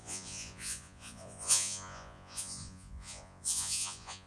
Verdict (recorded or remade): remade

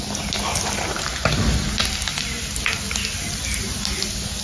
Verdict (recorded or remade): recorded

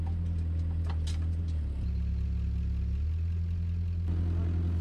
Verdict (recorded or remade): recorded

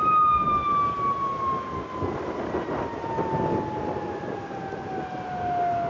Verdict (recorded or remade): recorded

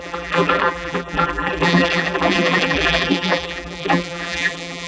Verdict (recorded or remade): remade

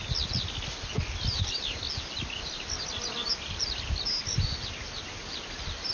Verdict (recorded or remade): recorded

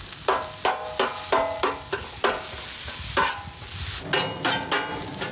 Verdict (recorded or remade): recorded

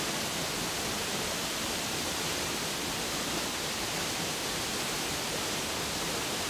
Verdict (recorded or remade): recorded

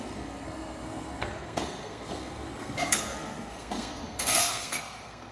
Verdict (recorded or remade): remade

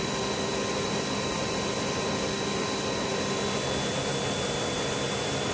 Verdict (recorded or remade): recorded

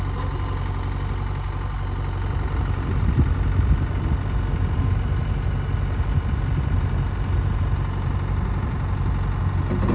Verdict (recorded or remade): recorded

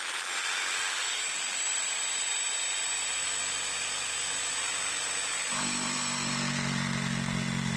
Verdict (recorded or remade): remade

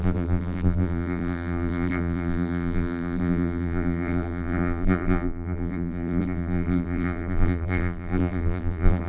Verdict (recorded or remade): remade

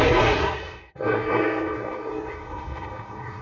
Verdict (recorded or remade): remade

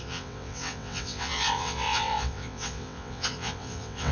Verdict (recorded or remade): remade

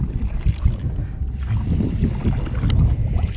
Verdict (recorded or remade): recorded